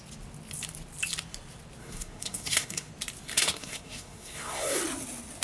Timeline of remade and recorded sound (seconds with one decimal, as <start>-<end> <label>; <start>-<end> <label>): 0.0-1.8 recorded; 1.8-2.9 remade; 2.9-3.3 recorded; 3.3-4.8 remade; 4.8-5.4 recorded